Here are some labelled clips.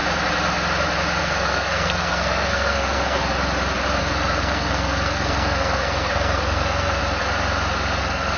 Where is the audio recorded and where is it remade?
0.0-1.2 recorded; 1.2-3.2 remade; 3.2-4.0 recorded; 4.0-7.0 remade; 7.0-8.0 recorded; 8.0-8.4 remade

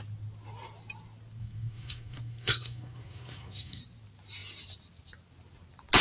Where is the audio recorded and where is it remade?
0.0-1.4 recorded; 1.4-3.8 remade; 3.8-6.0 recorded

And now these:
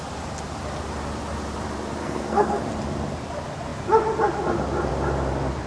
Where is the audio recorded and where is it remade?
0.0-2.0 recorded; 2.0-2.6 remade; 2.6-5.7 recorded

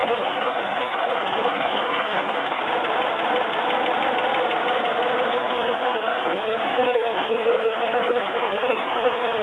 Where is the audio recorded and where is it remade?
0.0-2.6 remade; 2.6-5.3 recorded; 5.3-9.4 remade

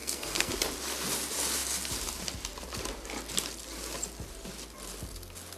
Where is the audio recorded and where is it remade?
0.0-0.5 remade; 0.5-5.6 recorded

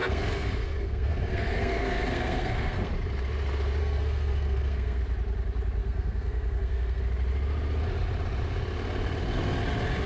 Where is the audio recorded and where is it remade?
0.0-2.9 remade; 2.9-3.8 recorded; 3.8-5.0 remade; 5.0-5.8 recorded; 5.8-7.0 remade; 7.0-10.1 recorded